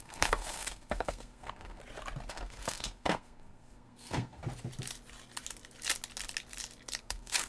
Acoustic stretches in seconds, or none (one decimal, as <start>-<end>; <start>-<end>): 1.8-2.3; 4.4-7.0